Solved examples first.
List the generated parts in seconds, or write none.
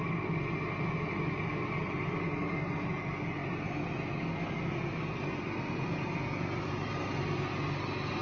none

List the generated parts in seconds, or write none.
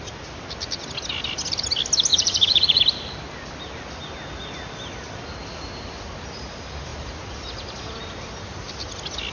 2.1-2.8 (vocoder, Vocos)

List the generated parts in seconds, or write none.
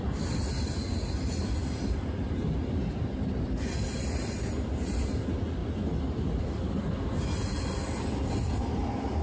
none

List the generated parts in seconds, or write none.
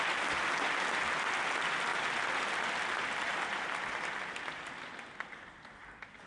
none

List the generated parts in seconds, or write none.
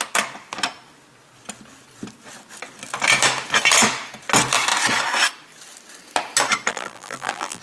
6.7-7.6 (vocoder, BigVGAN v2)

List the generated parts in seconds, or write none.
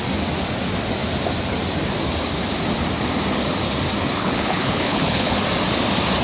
4.2-5.3 (codec, HILCodec)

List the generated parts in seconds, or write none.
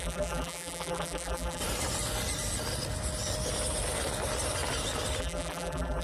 0.0-1.6 (vocoder, BigVGAN v2); 5.2-6.0